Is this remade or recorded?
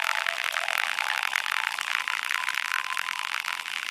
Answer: remade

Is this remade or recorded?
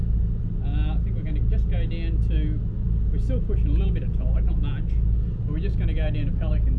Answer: recorded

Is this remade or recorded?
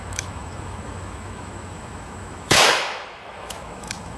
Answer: remade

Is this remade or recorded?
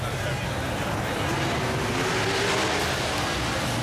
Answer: recorded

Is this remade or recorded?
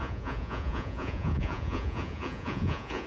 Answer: remade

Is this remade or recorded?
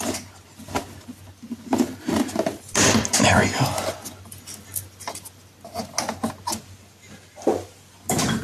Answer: recorded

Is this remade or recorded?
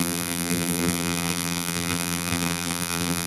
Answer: remade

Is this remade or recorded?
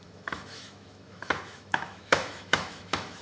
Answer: remade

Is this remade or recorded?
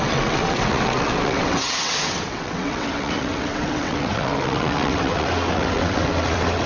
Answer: remade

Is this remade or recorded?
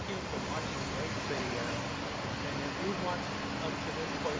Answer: recorded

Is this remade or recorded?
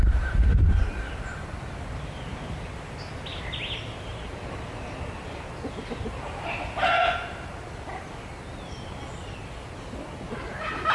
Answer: recorded